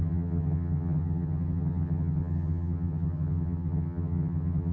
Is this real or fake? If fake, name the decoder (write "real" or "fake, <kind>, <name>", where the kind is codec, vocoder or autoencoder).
fake, vocoder, HiFi-GAN